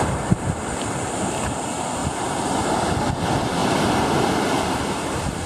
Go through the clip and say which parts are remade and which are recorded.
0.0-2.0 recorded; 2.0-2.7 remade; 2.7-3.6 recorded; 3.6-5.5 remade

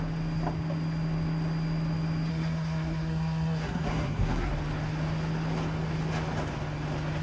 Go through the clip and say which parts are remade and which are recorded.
0.0-2.3 recorded; 2.3-4.5 remade; 4.5-7.2 recorded